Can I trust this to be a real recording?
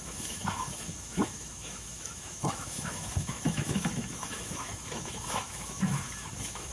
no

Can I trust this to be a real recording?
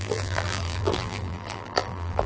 no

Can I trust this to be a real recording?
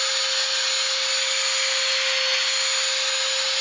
yes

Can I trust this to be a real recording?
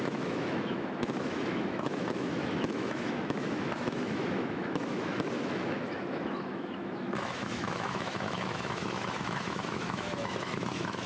no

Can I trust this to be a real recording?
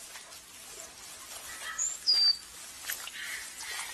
yes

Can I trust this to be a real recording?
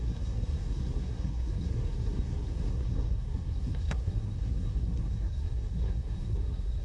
no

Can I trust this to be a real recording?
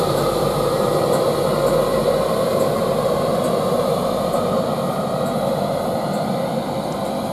no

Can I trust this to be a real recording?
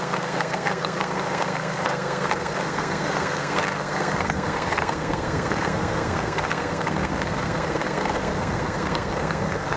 no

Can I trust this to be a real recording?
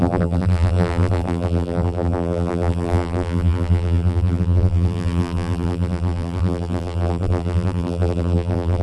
no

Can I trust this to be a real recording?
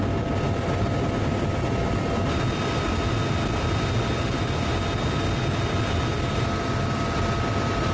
yes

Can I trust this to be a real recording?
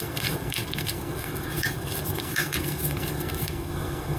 no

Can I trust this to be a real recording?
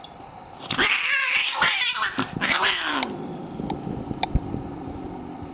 no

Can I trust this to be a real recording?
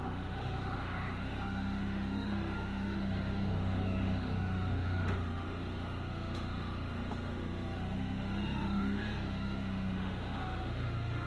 no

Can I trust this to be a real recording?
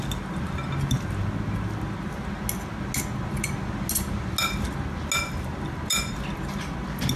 yes